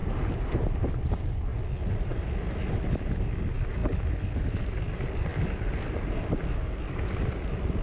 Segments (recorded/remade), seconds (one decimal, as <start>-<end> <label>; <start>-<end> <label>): 0.0-7.8 recorded